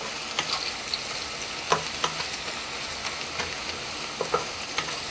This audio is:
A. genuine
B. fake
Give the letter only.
A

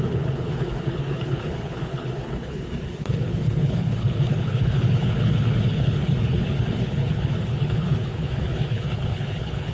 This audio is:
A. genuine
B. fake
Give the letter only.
B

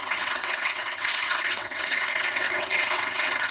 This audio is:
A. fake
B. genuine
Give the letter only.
A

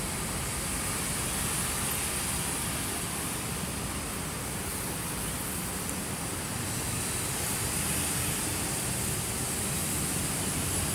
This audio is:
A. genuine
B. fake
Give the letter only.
A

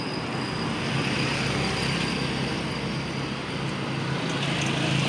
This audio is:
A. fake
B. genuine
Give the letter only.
B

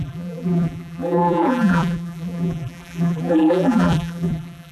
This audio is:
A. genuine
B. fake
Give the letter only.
B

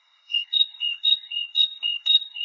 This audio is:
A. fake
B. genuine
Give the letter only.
A